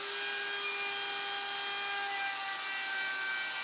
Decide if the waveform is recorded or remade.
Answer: recorded